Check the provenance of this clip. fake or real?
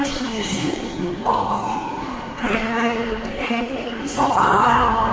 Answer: fake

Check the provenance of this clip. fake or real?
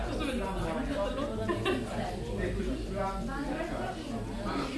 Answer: real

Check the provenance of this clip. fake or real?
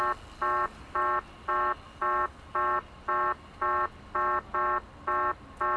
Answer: real